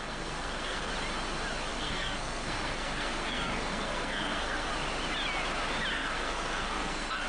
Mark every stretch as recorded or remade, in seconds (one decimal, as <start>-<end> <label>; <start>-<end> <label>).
0.0-0.9 remade; 0.9-1.7 recorded; 1.7-4.7 remade; 4.7-5.9 recorded; 5.9-7.3 remade